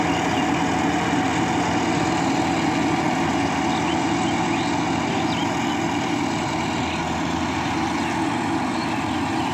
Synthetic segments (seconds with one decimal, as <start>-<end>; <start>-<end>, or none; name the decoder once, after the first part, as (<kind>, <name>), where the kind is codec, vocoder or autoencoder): none